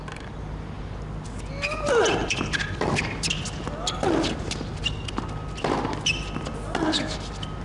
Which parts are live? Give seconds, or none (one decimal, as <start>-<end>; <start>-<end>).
0.0-2.2; 3.0-7.6